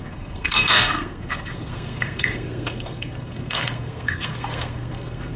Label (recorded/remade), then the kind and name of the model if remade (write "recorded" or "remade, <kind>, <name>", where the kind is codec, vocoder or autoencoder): remade, codec, SNAC